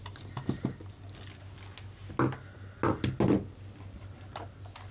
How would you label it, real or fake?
real